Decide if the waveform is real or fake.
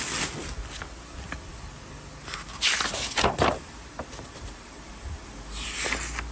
real